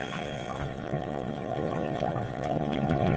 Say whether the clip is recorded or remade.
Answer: remade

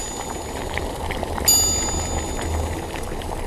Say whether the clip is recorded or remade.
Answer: recorded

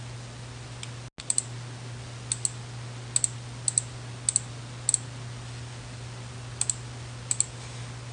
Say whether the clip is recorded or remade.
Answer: recorded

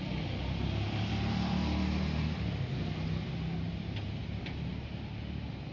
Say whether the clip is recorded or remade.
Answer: recorded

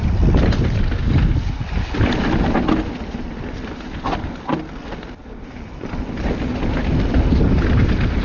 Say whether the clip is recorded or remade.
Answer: recorded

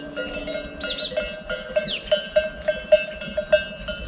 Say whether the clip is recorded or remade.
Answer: recorded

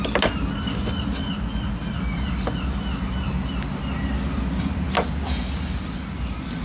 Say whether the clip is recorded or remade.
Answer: recorded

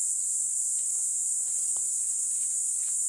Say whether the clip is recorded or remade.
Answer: recorded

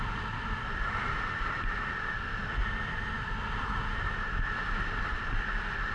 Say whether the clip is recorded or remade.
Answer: recorded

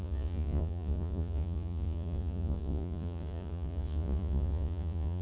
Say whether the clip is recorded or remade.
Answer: remade